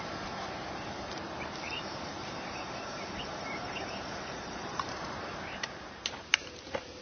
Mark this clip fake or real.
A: fake